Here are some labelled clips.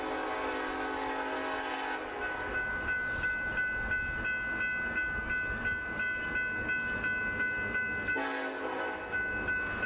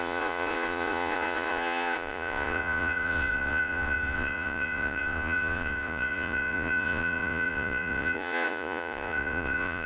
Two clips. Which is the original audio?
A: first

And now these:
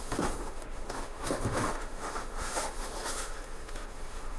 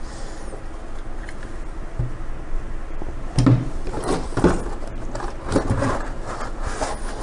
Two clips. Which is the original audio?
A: second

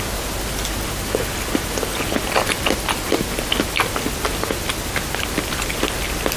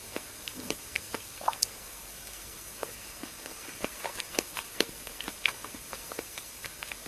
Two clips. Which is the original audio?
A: first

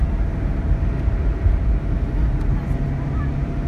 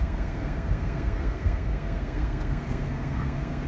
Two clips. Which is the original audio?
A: first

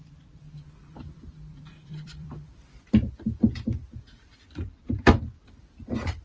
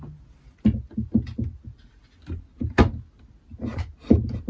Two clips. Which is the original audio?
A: second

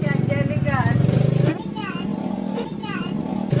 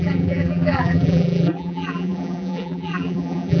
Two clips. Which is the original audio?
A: first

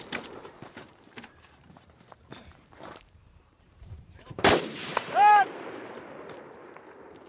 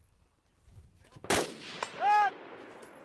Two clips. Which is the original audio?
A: second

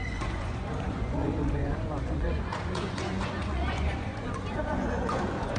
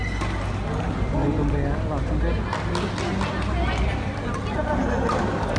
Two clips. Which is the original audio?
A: second